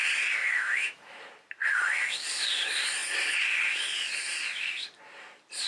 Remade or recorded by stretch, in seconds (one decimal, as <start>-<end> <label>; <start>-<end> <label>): 0.0-0.4 recorded; 0.4-1.2 remade; 1.2-5.7 recorded